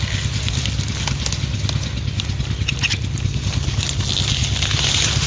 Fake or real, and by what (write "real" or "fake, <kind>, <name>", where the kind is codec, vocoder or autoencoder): real